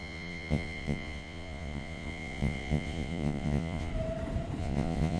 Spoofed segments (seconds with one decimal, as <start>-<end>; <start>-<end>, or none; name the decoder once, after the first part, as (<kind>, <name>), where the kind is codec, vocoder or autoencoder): 0.0-3.9 (vocoder, Vocos); 4.6-5.2